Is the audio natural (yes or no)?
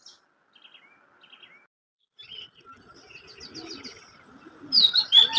yes